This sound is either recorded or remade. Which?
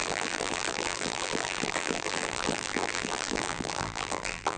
remade